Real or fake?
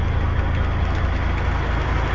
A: real